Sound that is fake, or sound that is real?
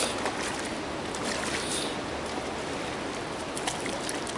real